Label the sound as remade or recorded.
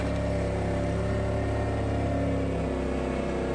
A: recorded